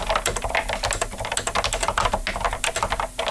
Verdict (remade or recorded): recorded